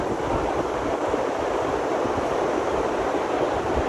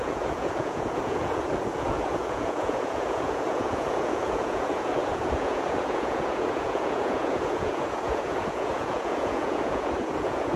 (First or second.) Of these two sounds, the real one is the first